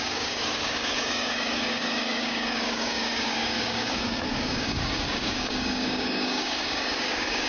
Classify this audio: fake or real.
fake